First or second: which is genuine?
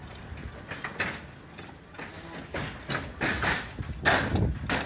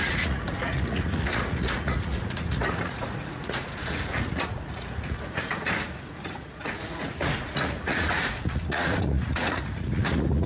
first